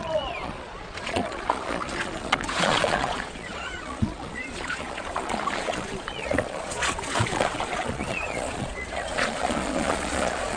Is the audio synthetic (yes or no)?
yes